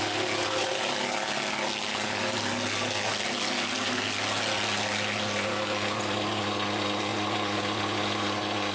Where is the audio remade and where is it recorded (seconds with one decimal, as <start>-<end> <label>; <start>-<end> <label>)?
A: 0.0-8.7 recorded